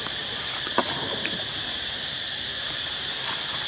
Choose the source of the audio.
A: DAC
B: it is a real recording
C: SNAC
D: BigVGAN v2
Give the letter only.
D